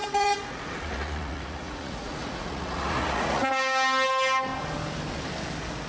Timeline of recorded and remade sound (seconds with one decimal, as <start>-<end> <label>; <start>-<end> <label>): 0.0-3.5 remade; 3.5-5.9 recorded